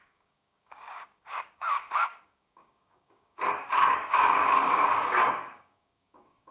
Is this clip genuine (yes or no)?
no